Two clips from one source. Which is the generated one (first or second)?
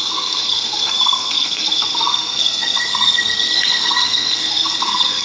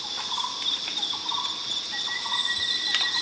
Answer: first